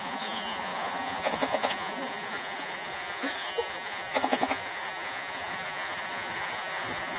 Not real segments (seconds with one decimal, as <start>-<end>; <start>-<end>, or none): 0.0-7.2